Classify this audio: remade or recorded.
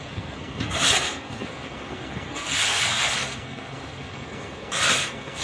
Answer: remade